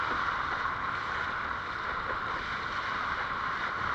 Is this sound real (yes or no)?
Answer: yes